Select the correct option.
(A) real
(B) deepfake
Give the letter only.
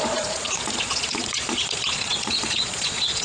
B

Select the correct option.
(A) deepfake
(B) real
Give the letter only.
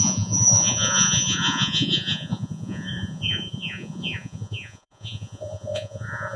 A